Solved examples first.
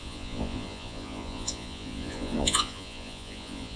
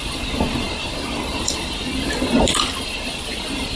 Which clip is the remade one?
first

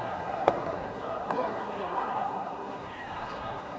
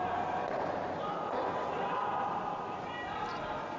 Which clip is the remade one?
first